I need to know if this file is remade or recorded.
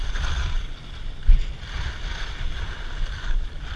recorded